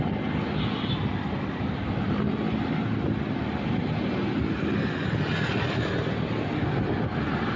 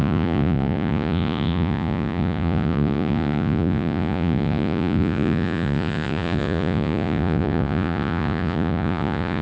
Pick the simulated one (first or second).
second